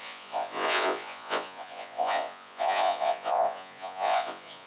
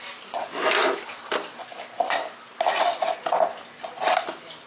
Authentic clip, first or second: second